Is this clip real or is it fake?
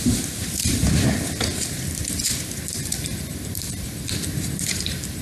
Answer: fake